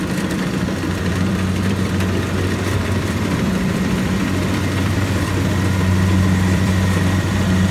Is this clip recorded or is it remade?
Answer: remade